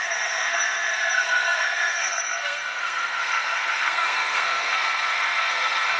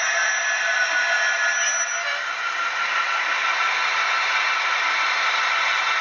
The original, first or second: second